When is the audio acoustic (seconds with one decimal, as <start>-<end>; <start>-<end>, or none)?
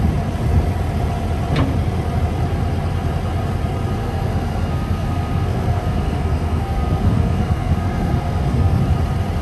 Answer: 0.0-4.0; 8.8-9.4